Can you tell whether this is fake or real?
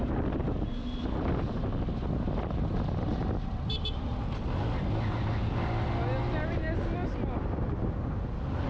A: real